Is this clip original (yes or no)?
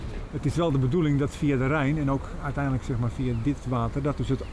yes